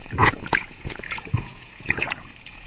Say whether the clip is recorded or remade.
remade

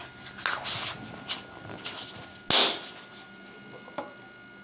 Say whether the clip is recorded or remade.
recorded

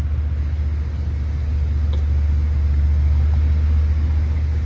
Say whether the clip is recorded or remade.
recorded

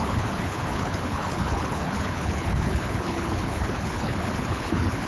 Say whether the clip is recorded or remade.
remade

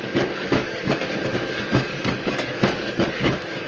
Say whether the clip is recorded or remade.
remade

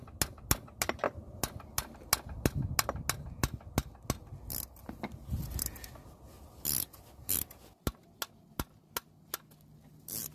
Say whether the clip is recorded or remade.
recorded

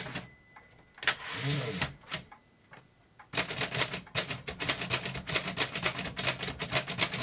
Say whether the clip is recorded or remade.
recorded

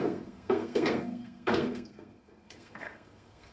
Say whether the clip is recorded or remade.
remade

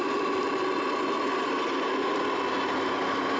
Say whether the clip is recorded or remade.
recorded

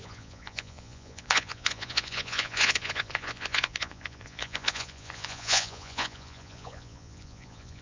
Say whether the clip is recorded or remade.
remade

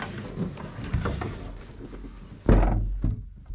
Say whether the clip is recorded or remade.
recorded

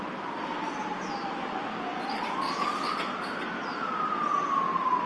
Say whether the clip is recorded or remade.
recorded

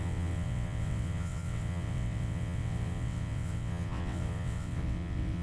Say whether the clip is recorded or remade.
remade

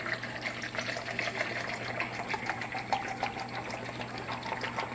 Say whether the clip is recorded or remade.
recorded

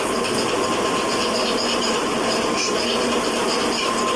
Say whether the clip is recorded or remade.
recorded